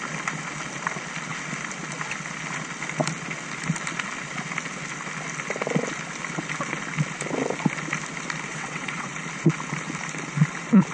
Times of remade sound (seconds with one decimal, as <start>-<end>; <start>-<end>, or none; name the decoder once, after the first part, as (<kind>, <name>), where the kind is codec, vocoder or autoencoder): 8.5-9.1 (vocoder, WaveNeXt)